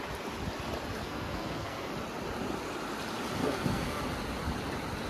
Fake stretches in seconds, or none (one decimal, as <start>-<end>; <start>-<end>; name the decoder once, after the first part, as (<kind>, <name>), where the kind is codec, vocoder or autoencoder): 1.0-1.9 (codec, SNAC); 3.4-4.0